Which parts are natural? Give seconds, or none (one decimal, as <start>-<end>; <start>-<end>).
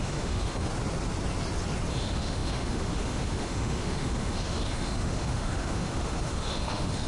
0.7-1.9